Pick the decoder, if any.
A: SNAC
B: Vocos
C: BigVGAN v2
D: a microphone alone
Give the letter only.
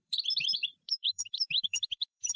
C